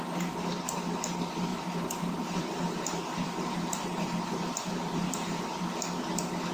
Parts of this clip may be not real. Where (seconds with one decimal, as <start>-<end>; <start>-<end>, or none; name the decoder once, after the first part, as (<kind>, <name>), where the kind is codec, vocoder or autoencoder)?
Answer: 1.5-5.4 (vocoder, BigVGAN v2)